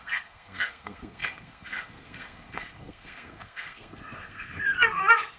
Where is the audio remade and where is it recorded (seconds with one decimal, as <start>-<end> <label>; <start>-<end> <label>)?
0.0-5.4 remade